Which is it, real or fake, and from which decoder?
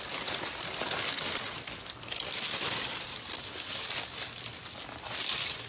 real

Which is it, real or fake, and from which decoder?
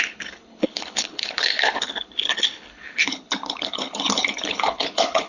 fake, codec, HILCodec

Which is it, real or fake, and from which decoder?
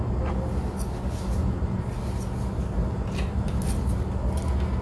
real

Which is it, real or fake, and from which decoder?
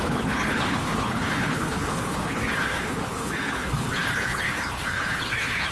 fake, codec, HILCodec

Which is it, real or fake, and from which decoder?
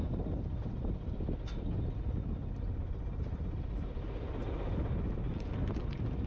real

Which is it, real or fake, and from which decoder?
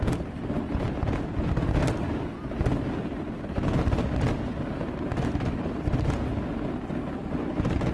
real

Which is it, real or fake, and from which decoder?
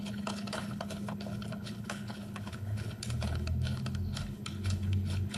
fake, codec, HILCodec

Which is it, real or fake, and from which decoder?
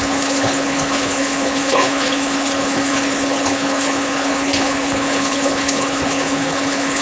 fake, codec, HILCodec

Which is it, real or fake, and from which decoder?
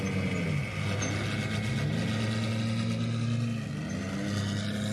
real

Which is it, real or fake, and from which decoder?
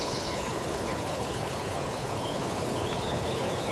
fake, codec, HILCodec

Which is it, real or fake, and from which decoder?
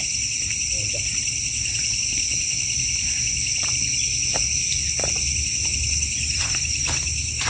real